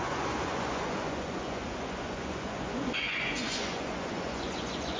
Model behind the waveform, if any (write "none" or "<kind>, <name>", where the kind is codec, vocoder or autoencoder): vocoder, Vocos